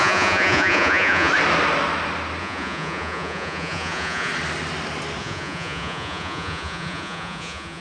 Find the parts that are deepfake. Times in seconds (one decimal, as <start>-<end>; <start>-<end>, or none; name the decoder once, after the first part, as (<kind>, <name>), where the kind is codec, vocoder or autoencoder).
0.0-1.3 (vocoder, Vocos); 2.4-4.3; 5.2-7.8